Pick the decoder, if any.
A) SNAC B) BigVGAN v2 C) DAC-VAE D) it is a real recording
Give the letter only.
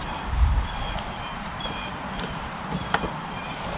B